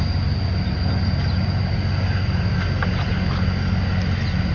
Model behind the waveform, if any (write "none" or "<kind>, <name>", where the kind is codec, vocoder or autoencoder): none